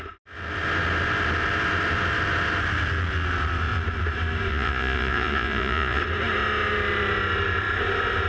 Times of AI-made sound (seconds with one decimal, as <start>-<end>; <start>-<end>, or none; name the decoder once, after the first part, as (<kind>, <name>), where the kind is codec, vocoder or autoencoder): 4.5-6.0 (vocoder, Vocos)

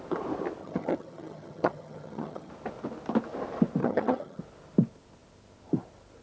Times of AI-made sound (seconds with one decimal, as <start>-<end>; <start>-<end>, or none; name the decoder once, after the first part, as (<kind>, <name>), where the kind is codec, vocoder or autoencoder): 0.6-2.5 (vocoder, HiFi-GAN); 3.8-4.4

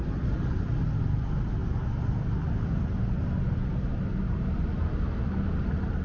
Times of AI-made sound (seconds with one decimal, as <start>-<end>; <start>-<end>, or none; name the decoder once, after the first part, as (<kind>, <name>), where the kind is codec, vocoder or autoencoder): none

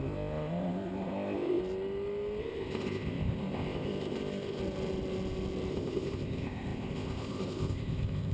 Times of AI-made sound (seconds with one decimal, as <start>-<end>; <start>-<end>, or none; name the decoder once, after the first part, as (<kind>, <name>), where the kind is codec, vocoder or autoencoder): 0.0-1.6 (codec, ZipCodec); 2.4-4.6; 5.7-8.3

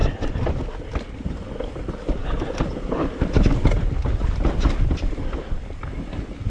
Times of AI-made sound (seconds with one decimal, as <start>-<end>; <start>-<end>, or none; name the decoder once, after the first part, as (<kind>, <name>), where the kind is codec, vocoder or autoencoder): none